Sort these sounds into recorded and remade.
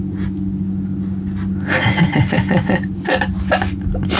recorded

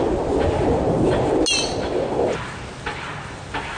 recorded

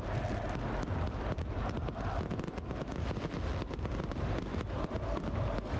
recorded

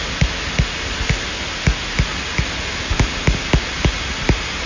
recorded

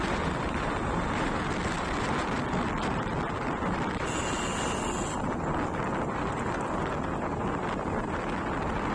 recorded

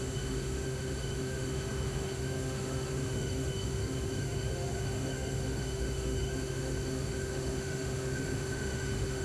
remade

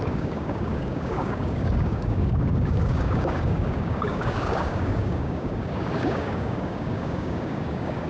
remade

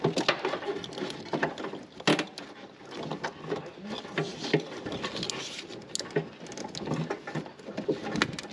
recorded